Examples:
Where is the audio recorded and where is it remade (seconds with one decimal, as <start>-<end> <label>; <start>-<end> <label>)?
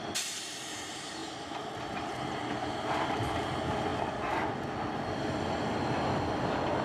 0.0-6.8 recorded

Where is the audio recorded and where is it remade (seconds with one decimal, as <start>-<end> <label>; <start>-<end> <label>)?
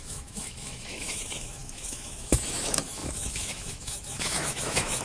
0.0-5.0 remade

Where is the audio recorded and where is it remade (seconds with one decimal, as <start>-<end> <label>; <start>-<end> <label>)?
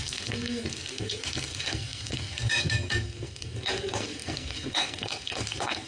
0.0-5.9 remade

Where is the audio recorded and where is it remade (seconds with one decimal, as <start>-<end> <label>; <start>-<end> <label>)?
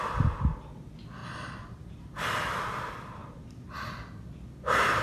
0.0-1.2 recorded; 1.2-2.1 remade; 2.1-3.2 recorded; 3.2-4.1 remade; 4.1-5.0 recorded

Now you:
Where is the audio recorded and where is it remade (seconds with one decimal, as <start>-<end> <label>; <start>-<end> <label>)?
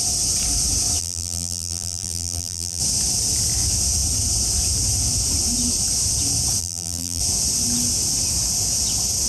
0.0-1.0 recorded; 1.0-2.8 remade; 2.8-6.6 recorded; 6.6-7.2 remade; 7.2-9.3 recorded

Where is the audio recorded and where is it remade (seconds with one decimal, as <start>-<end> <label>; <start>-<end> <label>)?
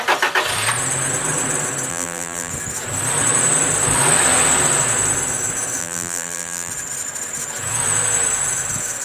0.0-1.9 recorded; 1.9-2.5 remade; 2.5-5.8 recorded; 5.8-6.7 remade; 6.7-9.0 recorded